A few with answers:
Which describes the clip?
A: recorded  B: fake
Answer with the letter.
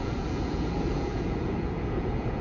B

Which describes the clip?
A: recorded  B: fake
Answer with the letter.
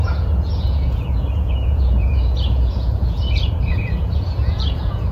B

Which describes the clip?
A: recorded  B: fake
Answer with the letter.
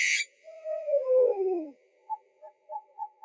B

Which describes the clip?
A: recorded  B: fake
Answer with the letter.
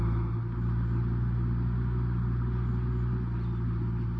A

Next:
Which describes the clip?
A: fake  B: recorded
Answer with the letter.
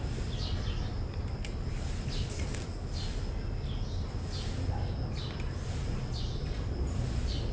B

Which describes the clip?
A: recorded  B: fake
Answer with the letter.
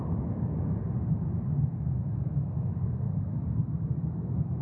A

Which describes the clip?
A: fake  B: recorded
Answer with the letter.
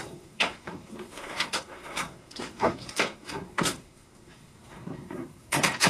A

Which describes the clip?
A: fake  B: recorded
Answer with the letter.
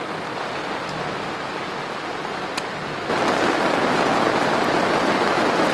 B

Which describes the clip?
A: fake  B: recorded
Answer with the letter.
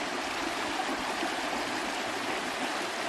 B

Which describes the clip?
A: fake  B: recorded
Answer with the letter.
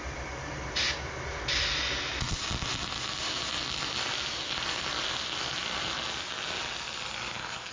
B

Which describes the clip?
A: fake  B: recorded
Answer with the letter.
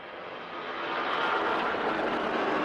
B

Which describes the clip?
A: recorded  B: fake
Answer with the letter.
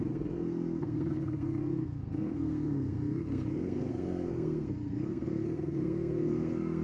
B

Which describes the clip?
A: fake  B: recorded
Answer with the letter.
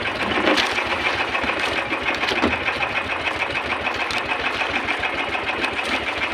B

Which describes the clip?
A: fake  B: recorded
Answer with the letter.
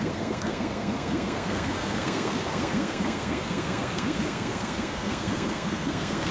A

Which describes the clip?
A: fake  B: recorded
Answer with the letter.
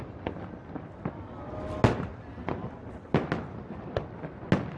B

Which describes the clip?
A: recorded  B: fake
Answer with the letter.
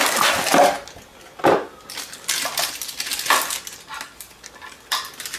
A